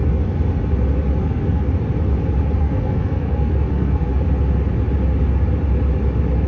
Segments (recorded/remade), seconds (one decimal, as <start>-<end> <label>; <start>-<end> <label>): 0.0-1.2 recorded; 1.2-1.7 remade; 1.7-2.6 recorded; 2.6-4.1 remade; 4.1-6.5 recorded